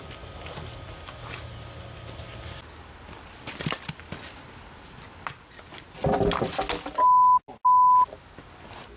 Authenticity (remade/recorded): recorded